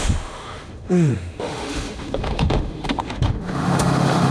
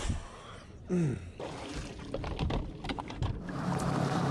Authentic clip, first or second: second